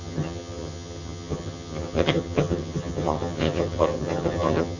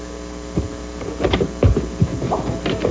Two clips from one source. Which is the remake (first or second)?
first